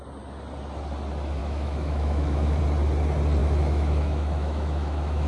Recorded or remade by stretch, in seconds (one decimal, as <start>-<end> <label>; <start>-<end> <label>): 0.0-1.4 recorded; 1.4-2.6 remade; 2.6-3.4 recorded; 3.4-5.3 remade